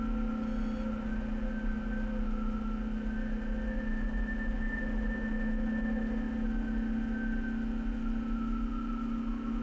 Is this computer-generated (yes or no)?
no